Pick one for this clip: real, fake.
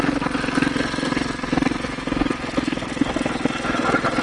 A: real